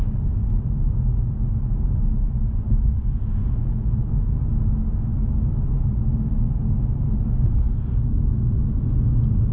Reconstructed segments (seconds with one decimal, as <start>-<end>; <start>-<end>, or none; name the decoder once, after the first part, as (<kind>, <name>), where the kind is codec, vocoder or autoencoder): 3.6-4.5 (autoencoder, DAC-VAE); 5.1-5.9